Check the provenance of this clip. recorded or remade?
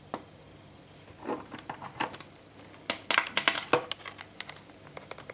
recorded